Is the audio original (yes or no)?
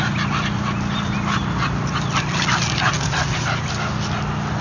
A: yes